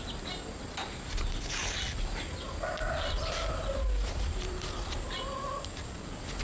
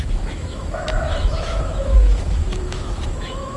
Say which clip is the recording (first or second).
first